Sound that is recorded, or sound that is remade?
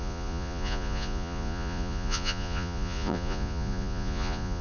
remade